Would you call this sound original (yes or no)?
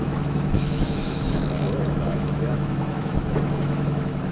no